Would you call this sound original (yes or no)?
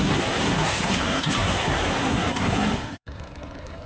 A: no